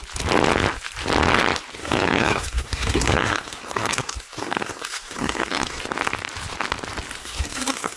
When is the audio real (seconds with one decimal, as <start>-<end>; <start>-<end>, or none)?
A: 0.0-1.8; 5.8-7.2